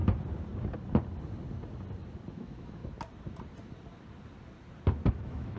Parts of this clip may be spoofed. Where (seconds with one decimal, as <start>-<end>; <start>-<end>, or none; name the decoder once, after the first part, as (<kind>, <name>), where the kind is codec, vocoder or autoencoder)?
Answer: 2.3-2.8 (autoencoder, DAC-VAE); 5.1-5.6